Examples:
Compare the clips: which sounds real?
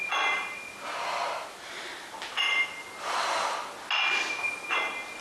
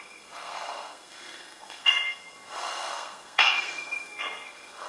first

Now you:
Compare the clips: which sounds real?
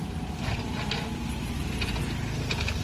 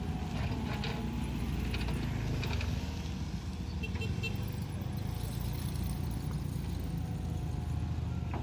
second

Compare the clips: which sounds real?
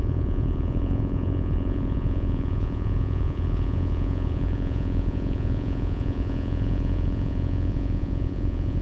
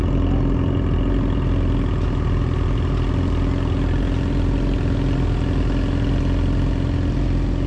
second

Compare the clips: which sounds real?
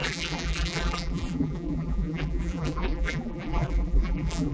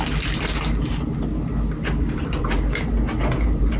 second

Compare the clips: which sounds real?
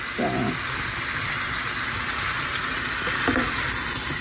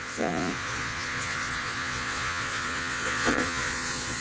first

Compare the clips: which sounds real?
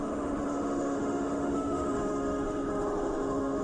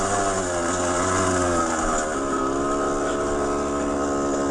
second